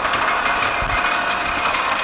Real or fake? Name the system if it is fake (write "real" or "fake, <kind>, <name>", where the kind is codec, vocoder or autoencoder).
real